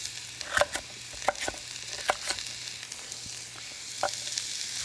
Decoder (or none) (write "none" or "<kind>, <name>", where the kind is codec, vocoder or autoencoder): none